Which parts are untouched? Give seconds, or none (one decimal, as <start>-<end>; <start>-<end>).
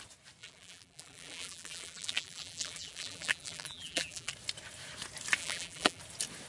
0.0-0.4; 4.3-5.4; 6.0-6.5